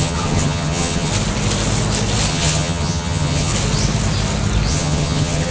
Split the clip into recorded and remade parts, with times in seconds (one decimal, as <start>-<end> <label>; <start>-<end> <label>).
0.0-1.1 remade; 1.1-2.3 recorded; 2.3-3.5 remade; 3.5-4.7 recorded; 4.7-5.5 remade